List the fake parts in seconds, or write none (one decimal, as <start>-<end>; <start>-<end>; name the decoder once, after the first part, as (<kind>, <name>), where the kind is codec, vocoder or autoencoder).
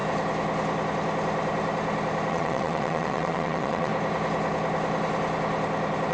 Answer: 2.3-3.9 (vocoder, WaveNeXt)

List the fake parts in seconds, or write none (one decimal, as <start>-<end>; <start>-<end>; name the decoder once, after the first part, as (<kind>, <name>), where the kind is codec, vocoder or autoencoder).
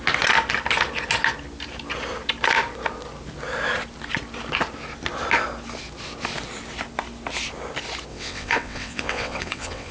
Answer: 8.1-9.9 (vocoder, WaveNeXt)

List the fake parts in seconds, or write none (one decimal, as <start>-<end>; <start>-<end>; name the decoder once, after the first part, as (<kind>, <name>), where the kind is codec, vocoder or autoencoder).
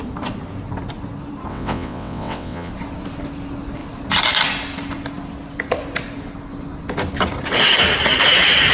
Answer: 1.5-2.7 (vocoder, WaveNeXt)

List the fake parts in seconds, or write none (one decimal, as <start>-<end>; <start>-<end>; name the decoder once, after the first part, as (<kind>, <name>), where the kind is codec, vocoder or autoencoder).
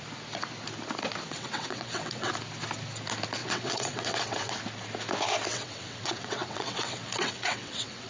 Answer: 1.3-2.3 (vocoder, WaveNeXt); 3.4-4.6; 5.5-8.1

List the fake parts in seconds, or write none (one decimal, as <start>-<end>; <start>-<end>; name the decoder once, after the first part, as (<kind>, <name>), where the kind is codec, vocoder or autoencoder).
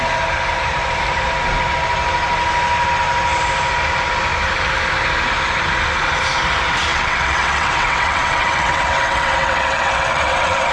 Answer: 6.9-10.7 (vocoder, WaveNeXt)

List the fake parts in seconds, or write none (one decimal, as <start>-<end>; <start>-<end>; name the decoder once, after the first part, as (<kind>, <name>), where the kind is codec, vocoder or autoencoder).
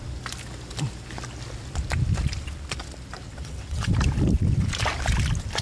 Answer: 3.3-3.9 (vocoder, WaveNeXt)